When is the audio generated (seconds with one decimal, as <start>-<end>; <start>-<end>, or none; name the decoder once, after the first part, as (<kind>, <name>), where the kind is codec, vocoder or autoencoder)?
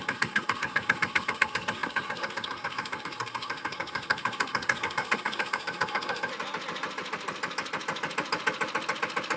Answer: 0.0-6.3 (codec, SNAC)